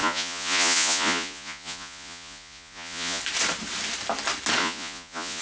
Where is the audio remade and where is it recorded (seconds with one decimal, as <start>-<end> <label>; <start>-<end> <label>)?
0.0-3.2 remade; 3.2-4.6 recorded; 4.6-5.4 remade